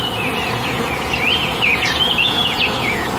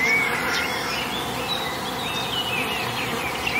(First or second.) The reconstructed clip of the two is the first